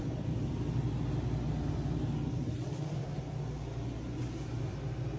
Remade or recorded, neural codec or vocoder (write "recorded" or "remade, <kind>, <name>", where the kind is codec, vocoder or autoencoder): recorded